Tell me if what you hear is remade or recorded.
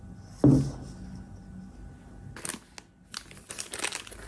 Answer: recorded